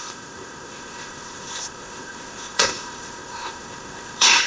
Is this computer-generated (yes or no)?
yes